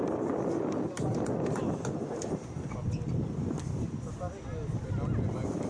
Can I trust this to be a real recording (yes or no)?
yes